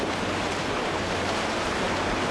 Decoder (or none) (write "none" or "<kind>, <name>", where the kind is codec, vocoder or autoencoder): vocoder, BigVGAN v2